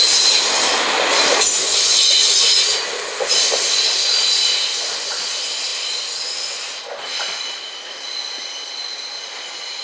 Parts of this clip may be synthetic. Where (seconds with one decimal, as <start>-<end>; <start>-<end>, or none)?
1.6-2.1